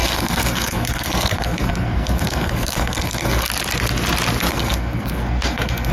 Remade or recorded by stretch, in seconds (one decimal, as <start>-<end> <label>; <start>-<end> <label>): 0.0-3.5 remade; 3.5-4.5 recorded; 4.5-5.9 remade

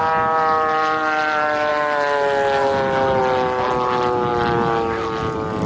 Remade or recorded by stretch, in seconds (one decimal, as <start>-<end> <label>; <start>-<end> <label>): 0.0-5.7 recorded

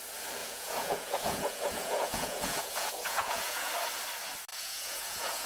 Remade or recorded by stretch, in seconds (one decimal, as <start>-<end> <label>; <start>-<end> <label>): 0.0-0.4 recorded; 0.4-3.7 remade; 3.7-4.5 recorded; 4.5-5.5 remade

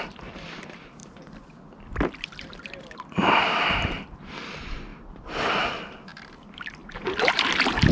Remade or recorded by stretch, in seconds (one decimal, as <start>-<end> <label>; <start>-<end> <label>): 0.0-4.9 remade; 4.9-5.7 recorded; 5.7-6.8 remade; 6.8-7.3 recorded; 7.3-7.9 remade

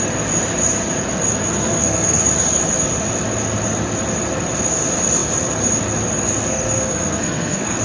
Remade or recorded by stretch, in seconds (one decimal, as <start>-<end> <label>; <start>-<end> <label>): 0.0-1.5 recorded; 1.5-2.2 remade; 2.2-6.5 recorded; 6.5-7.8 remade